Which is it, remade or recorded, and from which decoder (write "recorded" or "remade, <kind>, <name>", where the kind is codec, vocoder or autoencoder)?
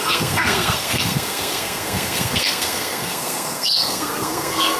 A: remade, codec, SNAC